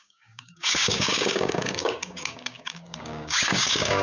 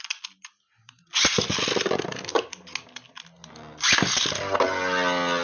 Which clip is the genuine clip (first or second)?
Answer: second